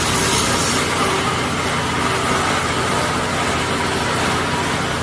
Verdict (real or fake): real